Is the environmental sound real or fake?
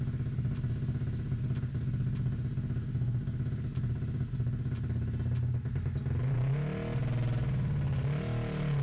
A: real